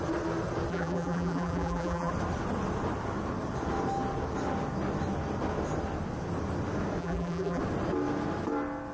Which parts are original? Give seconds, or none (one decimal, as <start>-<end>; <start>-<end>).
0.0-0.7; 2.1-7.0; 7.6-8.9